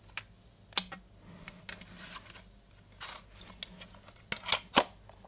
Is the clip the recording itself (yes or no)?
yes